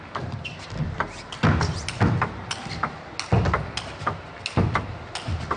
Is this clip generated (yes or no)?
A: no